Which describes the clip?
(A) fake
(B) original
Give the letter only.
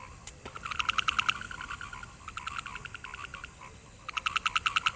B